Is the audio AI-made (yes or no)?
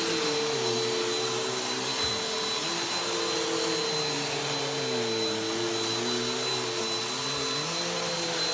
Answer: no